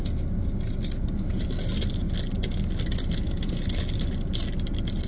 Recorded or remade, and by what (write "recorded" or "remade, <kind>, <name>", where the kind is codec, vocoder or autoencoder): recorded